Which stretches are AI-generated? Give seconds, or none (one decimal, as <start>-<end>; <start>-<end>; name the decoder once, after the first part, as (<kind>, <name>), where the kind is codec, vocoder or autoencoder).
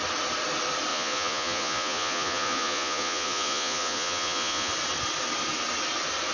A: 0.9-4.7 (vocoder, Vocos)